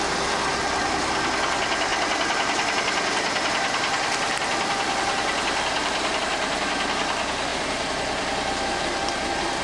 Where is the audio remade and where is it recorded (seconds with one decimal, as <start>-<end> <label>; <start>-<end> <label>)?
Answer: 0.0-1.9 recorded; 1.9-6.2 remade; 6.2-7.5 recorded; 7.5-8.8 remade; 8.8-9.6 recorded